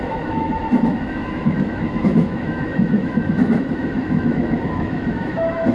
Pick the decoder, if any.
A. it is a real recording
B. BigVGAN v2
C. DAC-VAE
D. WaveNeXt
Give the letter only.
C